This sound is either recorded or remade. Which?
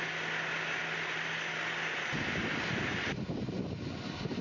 recorded